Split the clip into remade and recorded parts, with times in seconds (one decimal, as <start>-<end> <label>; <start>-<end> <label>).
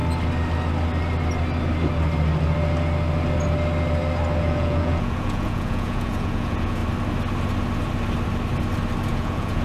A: 0.0-4.4 recorded; 4.4-6.8 remade; 6.8-9.1 recorded; 9.1-9.6 remade